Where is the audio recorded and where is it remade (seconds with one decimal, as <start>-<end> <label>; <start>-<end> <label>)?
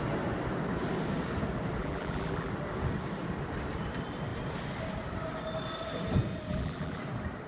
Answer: 0.0-1.8 recorded; 1.8-2.5 remade; 2.5-6.5 recorded; 6.5-7.0 remade; 7.0-7.5 recorded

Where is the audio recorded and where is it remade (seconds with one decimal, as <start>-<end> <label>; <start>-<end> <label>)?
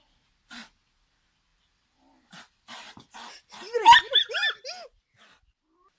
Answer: 0.0-1.5 recorded; 1.5-4.3 remade; 4.3-6.0 recorded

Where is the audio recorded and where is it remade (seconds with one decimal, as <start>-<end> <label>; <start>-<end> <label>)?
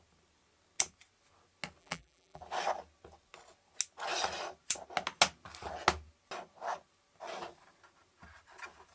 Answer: 0.0-1.8 recorded; 1.8-2.4 remade; 2.4-8.9 recorded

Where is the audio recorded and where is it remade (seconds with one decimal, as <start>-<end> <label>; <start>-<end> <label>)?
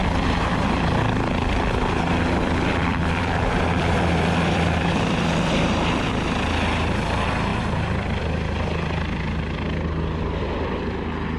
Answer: 0.0-2.9 recorded; 2.9-6.1 remade; 6.1-7.5 recorded; 7.5-8.2 remade; 8.2-11.4 recorded